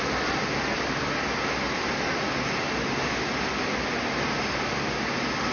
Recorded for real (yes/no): yes